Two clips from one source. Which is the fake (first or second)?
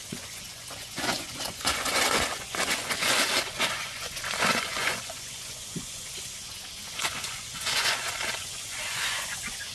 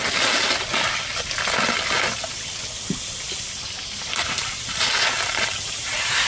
first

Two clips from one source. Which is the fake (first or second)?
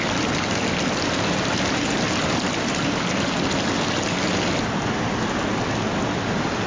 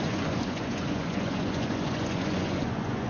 second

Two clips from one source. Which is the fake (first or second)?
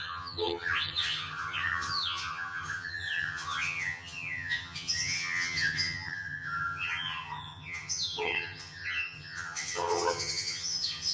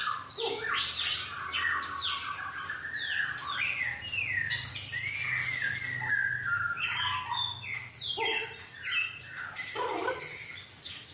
first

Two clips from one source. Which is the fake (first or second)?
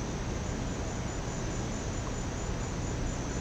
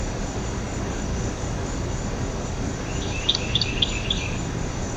second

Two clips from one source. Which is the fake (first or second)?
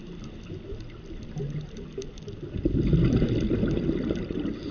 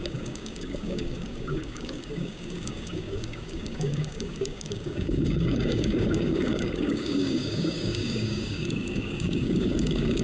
second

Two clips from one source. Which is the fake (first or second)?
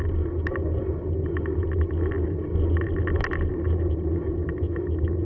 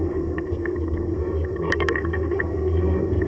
second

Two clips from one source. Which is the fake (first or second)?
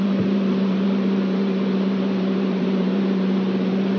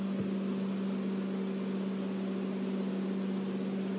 first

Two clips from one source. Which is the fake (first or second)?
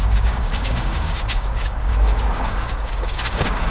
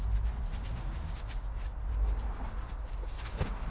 first